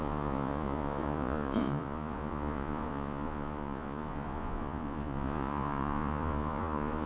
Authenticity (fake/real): fake